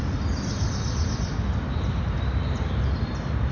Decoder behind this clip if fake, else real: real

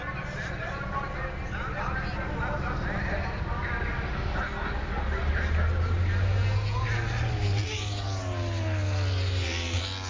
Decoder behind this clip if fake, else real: real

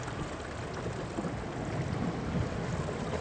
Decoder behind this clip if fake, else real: real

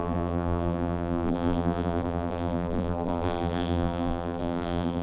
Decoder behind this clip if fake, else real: fake, vocoder, BigVGAN v2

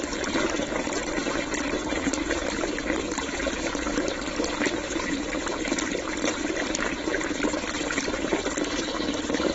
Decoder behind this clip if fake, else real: fake, vocoder, BigVGAN v2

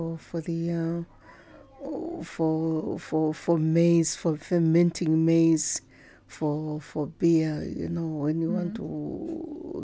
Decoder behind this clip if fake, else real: real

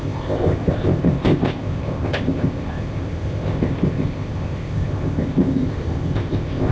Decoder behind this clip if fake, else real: fake, codec, ZipCodec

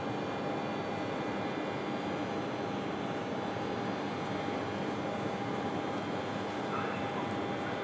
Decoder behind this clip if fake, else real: real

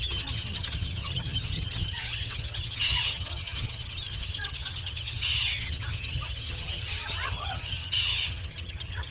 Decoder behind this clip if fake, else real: fake, vocoder, HiFi-GAN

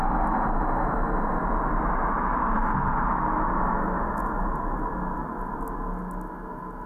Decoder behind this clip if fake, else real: real